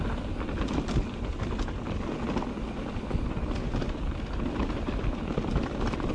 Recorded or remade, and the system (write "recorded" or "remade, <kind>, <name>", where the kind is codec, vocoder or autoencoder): recorded